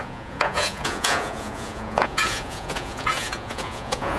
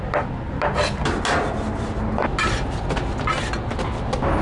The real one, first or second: second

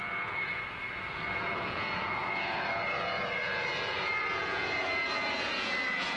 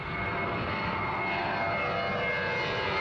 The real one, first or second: second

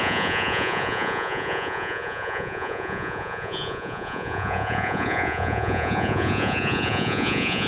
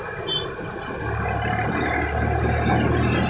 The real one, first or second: second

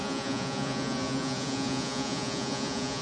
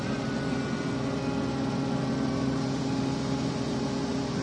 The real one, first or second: second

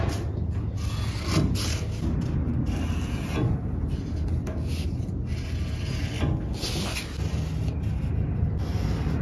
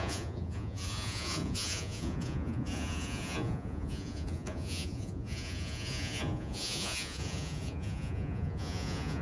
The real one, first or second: first